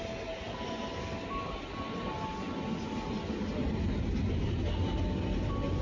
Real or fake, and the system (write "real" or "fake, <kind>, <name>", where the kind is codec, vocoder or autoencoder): real